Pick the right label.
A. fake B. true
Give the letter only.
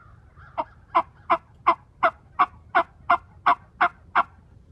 B